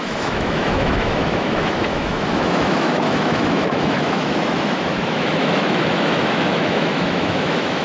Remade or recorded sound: remade